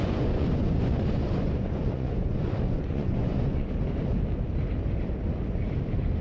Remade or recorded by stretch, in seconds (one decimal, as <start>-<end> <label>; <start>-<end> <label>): 0.0-3.7 remade; 3.7-6.2 recorded